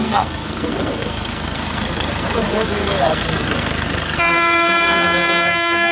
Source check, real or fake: fake